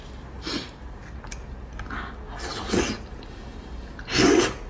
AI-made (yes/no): no